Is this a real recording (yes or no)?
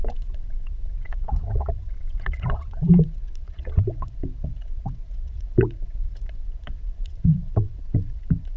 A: no